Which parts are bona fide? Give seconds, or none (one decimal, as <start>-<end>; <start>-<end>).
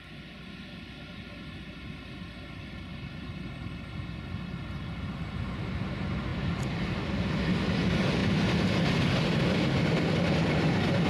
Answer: 0.0-2.9; 4.2-6.3; 7.3-8.2; 10.6-11.1